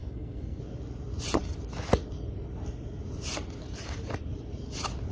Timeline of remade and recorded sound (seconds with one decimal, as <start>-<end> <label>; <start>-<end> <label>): 0.0-0.6 remade; 0.6-5.1 recorded